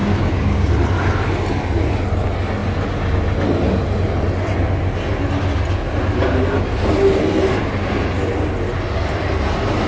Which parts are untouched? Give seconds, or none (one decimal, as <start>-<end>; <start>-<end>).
0.7-9.9